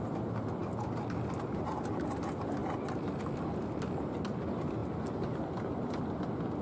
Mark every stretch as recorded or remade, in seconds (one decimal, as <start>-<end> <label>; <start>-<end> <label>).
0.0-6.6 recorded